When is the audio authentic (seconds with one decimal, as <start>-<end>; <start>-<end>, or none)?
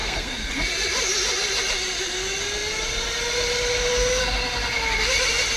0.5-5.6